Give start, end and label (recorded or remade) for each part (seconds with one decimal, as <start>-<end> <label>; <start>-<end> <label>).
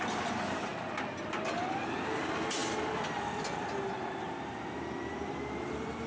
0.0-6.1 recorded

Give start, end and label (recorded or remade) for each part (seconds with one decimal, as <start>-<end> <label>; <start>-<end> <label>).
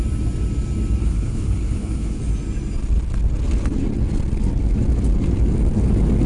0.0-1.0 recorded; 1.0-2.2 remade; 2.2-6.3 recorded